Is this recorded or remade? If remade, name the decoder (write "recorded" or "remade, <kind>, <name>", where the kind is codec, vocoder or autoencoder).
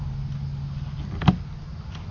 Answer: recorded